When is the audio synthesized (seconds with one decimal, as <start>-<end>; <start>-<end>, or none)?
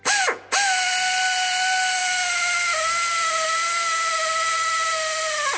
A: none